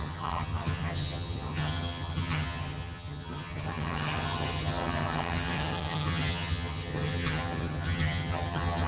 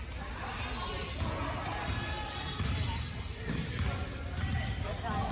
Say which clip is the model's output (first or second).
first